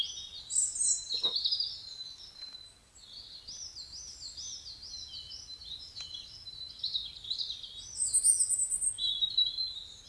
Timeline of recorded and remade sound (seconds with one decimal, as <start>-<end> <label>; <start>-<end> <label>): 0.0-10.1 recorded